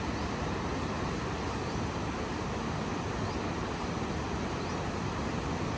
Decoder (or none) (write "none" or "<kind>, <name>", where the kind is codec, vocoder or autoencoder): none